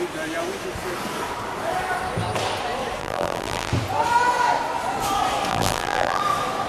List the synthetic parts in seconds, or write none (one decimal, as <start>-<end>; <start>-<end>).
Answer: 3.0-3.7; 5.5-6.2